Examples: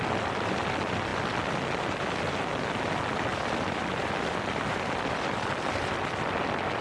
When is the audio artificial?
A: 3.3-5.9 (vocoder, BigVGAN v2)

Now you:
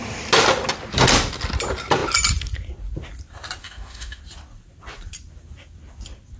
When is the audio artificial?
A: 3.6-4.2 (autoencoder, DAC-VAE)

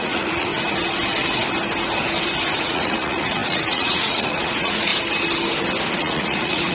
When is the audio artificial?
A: 0.0-0.5 (vocoder, Vocos); 2.6-4.9; 5.9-6.7

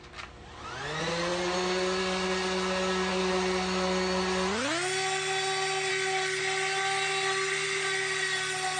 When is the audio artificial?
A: none

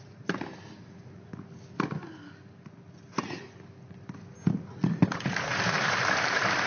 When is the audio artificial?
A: 0.0-1.3 (vocoder, BigVGAN v2); 5.3-6.7

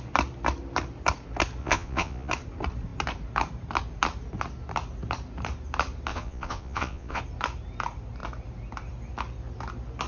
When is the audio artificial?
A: 1.6-2.3 (vocoder, Vocos); 6.1-7.2

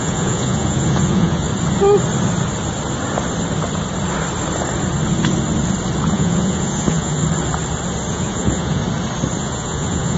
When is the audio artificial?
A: 0.0-1.5 (vocoder, Vocos); 6.1-7.2; 8.1-8.8; 9.4-10.2

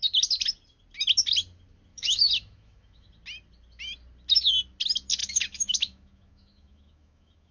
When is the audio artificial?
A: 1.9-3.1 (autoencoder, DAC-VAE); 5.2-7.5